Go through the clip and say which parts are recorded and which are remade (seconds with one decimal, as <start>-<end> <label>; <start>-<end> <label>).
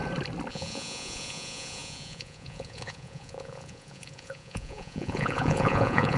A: 0.0-0.5 recorded; 0.5-6.2 remade